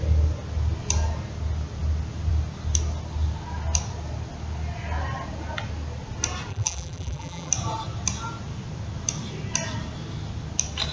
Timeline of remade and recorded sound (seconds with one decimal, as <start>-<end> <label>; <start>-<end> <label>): 0.0-6.5 recorded; 6.5-7.5 remade; 7.5-10.9 recorded